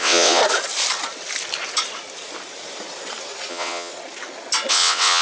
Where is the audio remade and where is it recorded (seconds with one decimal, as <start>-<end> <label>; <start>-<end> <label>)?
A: 0.0-0.4 remade; 0.4-3.5 recorded; 3.5-3.9 remade; 3.9-4.7 recorded; 4.7-5.2 remade